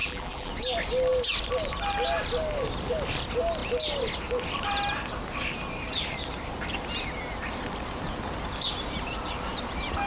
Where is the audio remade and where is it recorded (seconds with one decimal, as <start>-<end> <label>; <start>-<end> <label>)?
0.0-0.5 remade; 0.5-10.1 recorded